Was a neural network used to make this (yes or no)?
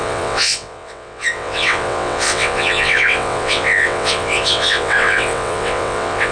yes